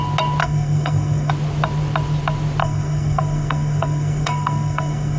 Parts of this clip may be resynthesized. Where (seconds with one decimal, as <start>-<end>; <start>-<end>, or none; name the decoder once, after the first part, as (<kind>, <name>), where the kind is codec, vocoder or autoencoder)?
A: 0.4-1.3 (codec, SNAC); 2.6-5.2